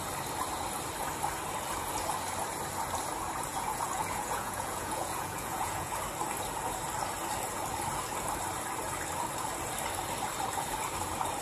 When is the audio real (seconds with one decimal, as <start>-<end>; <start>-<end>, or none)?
0.0-3.5; 6.0-11.4